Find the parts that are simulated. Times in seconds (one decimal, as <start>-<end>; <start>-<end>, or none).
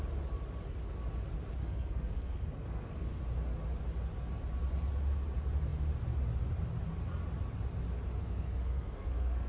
1.6-3.2; 8.2-9.5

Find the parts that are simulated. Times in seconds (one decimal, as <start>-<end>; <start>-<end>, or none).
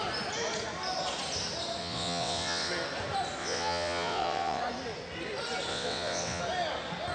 1.8-2.7; 3.4-4.6; 5.7-6.4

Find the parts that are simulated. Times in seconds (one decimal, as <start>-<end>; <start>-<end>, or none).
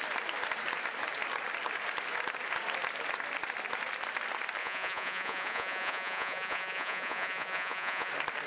4.6-8.1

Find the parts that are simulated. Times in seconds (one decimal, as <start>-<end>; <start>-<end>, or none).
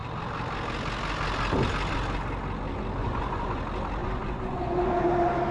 3.0-3.6; 4.0-4.9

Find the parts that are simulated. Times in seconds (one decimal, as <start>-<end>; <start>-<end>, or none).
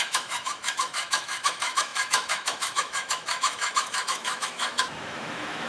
0.0-5.7